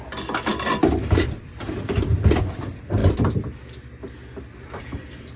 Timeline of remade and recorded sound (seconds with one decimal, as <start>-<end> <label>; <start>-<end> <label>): 0.0-3.0 remade; 3.0-4.5 recorded; 4.5-5.4 remade